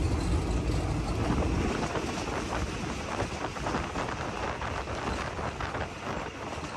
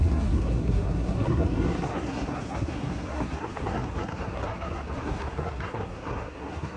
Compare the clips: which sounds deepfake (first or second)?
second